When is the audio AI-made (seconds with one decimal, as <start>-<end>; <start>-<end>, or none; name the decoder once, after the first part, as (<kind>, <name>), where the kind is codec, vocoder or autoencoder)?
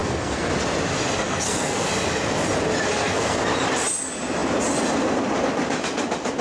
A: 0.0-0.5 (codec, SNAC); 1.2-1.9; 2.9-3.4